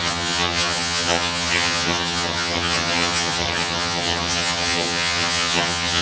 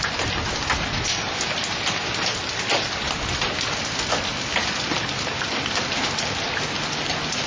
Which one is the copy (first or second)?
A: first